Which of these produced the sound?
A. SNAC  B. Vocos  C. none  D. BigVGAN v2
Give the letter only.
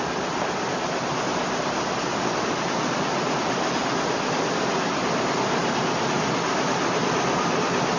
C